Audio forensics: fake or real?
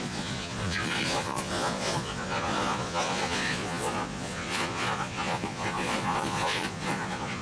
fake